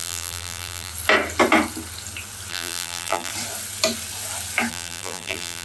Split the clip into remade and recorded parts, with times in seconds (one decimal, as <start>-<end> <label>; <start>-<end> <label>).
0.0-0.9 remade; 0.9-2.5 recorded; 2.5-3.3 remade; 3.3-4.7 recorded; 4.7-5.6 remade